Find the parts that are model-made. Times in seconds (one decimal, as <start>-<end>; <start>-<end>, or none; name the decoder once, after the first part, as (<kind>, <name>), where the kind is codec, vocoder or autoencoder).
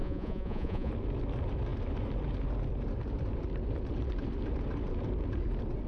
0.0-0.9 (vocoder, Vocos)